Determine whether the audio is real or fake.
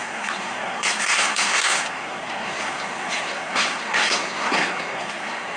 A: fake